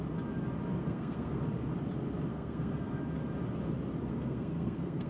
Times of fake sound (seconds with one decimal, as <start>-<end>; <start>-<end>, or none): 0.8-1.4; 2.3-3.0; 4.1-5.1